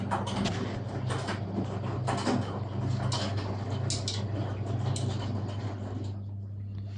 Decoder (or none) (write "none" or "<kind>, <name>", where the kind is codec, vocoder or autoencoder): none